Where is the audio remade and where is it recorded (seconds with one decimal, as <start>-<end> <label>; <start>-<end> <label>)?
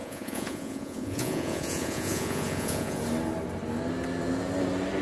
0.0-3.0 remade; 3.0-5.0 recorded